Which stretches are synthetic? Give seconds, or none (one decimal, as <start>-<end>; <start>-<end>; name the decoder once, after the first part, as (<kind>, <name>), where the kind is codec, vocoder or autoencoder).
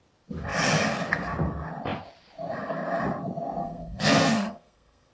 3.6-5.1 (codec, SNAC)